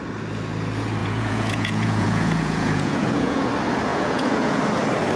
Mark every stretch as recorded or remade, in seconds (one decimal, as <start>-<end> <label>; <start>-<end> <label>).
0.0-1.0 recorded; 1.0-3.5 remade; 3.5-3.9 recorded; 3.9-4.6 remade; 4.6-5.2 recorded